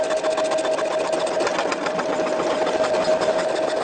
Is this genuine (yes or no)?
yes